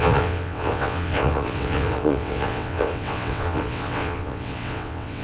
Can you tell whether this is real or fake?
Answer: fake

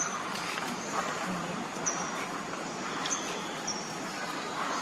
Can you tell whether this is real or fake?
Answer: fake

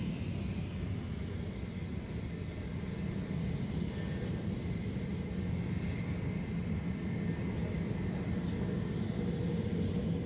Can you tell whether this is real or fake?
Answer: real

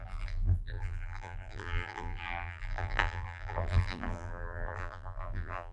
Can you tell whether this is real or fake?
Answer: fake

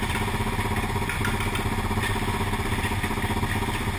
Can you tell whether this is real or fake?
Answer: real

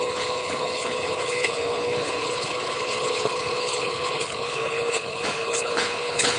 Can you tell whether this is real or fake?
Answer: fake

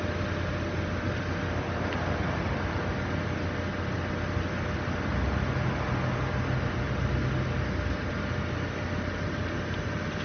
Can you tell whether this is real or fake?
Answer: real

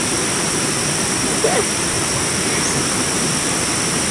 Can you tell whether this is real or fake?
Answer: fake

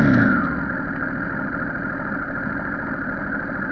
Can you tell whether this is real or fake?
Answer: real